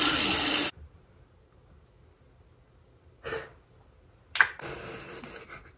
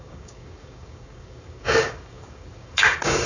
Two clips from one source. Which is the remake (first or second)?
second